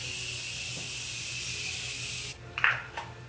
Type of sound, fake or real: real